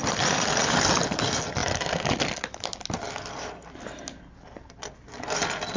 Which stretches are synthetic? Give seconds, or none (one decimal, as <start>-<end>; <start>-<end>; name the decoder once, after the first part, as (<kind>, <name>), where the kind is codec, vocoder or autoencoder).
none